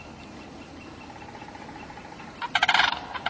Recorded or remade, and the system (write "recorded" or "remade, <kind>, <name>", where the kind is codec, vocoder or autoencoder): recorded